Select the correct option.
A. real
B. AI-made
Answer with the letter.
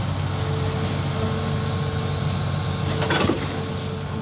A